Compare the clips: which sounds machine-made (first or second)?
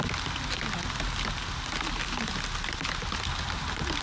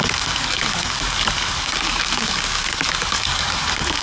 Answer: second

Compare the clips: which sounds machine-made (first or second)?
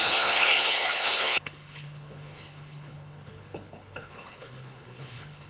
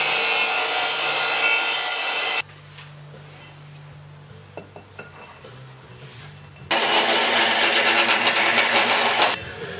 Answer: first